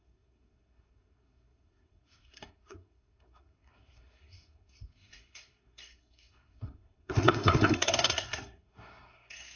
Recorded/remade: remade